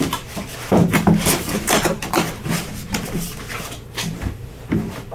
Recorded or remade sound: remade